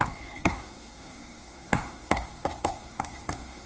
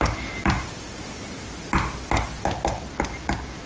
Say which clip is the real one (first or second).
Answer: second